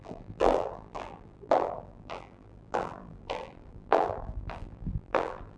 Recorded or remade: remade